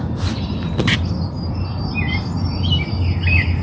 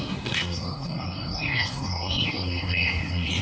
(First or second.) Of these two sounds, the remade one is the second